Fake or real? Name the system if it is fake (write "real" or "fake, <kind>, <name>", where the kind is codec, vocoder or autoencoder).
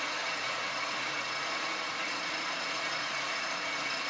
fake, vocoder, Vocos